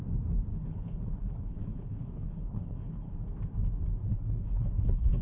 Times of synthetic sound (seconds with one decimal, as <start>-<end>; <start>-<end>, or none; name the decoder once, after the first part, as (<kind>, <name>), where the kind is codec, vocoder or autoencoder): 0.5-3.1 (codec, HILCodec); 4.1-5.2